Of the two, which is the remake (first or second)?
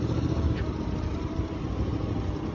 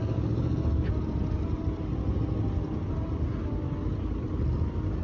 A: first